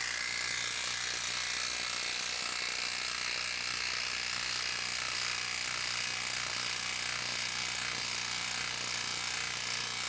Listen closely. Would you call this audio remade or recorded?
recorded